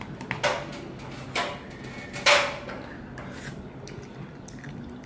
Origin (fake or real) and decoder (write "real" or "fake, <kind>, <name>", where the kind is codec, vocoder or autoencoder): real